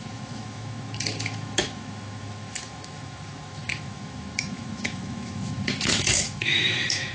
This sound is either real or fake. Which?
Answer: fake